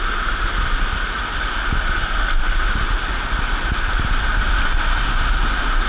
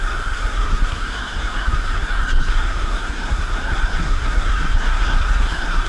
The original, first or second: first